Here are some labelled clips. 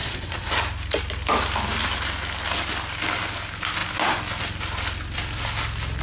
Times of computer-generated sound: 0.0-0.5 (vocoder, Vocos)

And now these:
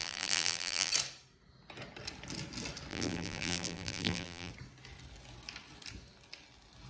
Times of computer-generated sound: 0.0-0.9 (vocoder, BigVGAN v2); 2.9-4.5

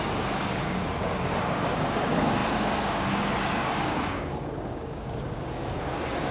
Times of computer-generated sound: 0.0-0.8 (codec, DAC); 1.4-6.3

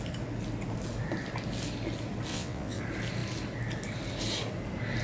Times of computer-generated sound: 2.3-2.8 (vocoder, WaveNeXt)

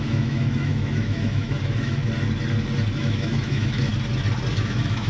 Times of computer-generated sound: 0.0-2.0 (autoencoder, DAC-VAE); 3.0-3.9; 4.5-5.1

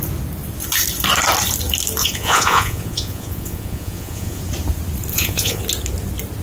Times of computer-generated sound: 2.0-4.4 (vocoder, Vocos); 5.1-5.6